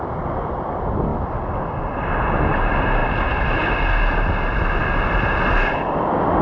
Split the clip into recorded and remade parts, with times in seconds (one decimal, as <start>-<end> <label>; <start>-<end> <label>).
0.0-6.4 recorded